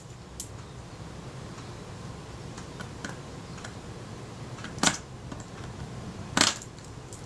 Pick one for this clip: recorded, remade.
recorded